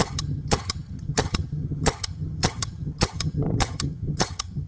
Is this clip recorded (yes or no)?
no